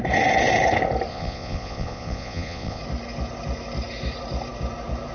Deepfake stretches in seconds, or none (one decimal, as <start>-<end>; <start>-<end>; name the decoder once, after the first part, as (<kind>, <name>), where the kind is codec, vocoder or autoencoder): 1.1-2.8 (vocoder, Vocos)